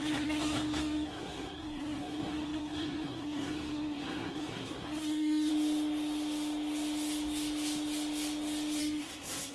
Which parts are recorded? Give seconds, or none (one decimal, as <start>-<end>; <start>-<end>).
5.5-8.8